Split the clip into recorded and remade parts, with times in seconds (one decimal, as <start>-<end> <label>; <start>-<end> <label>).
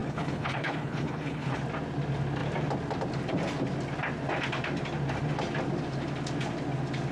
0.0-1.6 remade; 1.6-7.1 recorded